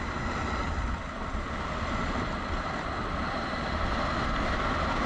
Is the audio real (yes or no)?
yes